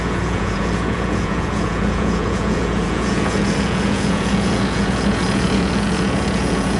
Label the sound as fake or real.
fake